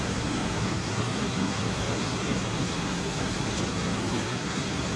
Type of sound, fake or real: fake